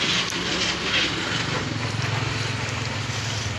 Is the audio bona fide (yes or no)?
yes